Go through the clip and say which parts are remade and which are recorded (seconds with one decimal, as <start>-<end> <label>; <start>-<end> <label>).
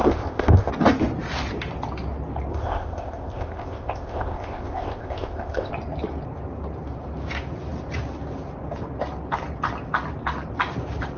0.0-0.7 remade; 0.7-2.5 recorded; 2.5-5.7 remade; 5.7-11.2 recorded